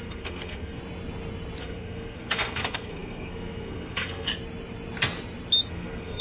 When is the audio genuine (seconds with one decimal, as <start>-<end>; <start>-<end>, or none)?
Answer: 0.8-1.6; 4.3-5.7